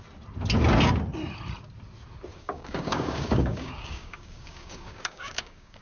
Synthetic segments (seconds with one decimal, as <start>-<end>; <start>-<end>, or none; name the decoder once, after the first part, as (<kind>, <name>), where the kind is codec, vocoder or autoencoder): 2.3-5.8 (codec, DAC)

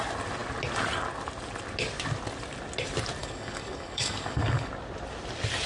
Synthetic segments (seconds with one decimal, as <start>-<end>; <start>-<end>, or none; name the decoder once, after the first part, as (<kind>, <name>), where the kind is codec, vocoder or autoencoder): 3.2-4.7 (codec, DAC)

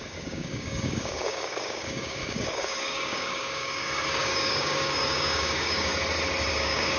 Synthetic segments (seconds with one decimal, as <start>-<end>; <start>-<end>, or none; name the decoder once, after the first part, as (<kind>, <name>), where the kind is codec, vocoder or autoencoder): 0.0-5.9 (codec, DAC); 6.5-7.0